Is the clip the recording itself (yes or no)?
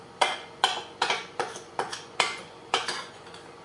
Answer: no